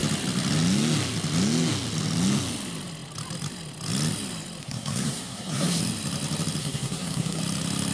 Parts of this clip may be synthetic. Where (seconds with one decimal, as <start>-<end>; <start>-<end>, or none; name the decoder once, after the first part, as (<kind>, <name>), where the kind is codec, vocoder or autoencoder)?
4.6-5.8 (codec, SNAC); 6.6-7.4